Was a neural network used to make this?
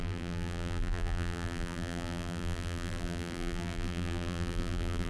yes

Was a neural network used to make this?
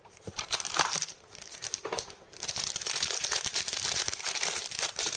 yes